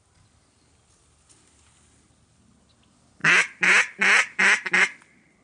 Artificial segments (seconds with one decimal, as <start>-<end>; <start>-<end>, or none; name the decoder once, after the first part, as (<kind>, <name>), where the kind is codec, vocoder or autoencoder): none